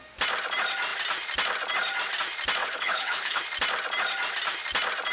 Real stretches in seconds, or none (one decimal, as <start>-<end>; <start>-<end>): 0.0-2.6; 3.4-5.1